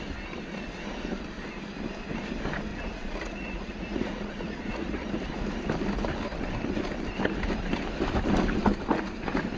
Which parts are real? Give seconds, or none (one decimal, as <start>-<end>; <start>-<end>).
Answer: 0.0-2.7; 5.1-9.6